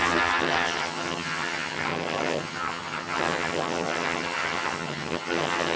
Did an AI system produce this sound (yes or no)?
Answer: yes